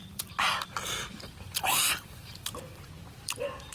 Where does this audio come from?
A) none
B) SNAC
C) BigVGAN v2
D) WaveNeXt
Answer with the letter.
C